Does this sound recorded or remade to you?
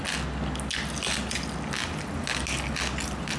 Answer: recorded